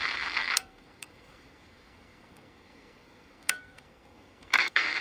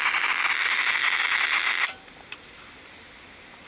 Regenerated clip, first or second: first